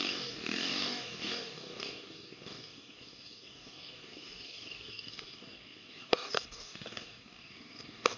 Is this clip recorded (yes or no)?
no